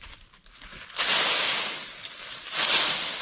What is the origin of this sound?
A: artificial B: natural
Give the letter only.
B